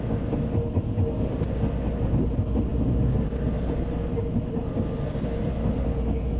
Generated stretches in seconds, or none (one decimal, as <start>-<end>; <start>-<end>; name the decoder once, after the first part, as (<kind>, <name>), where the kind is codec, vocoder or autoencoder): none